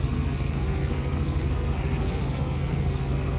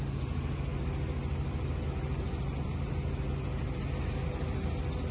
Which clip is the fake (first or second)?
first